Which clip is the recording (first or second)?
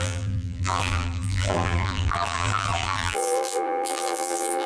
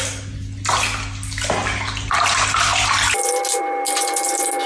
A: second